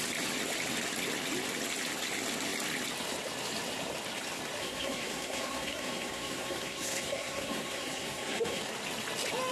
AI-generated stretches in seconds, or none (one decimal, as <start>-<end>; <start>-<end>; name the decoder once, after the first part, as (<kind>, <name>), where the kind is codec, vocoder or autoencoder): 4.6-8.6 (codec, SNAC)